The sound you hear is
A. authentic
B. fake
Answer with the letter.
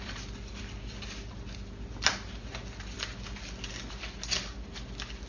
A